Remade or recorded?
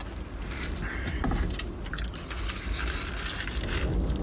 recorded